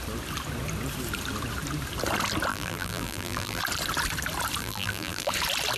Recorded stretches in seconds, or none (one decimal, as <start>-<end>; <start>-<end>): 0.0-2.5; 3.6-4.6; 5.3-5.8

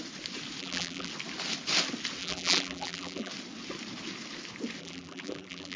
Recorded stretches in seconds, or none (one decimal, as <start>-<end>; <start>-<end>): 0.0-0.6; 1.1-2.2; 3.3-4.8